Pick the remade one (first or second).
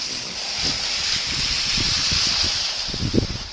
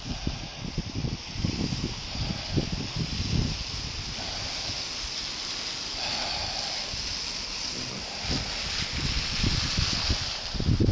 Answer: first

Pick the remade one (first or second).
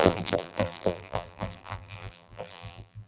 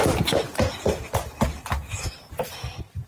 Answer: first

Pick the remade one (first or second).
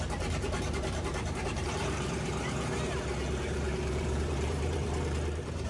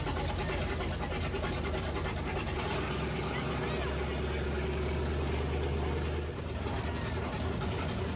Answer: first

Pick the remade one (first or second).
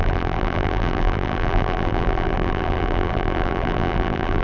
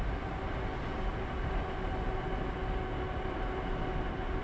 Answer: first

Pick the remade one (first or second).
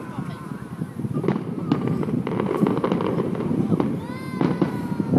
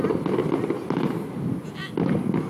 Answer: first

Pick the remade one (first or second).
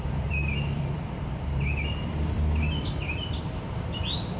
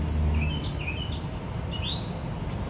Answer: first